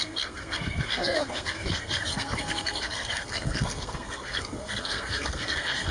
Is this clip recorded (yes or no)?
no